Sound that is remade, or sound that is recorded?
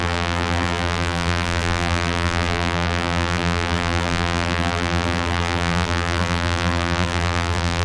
remade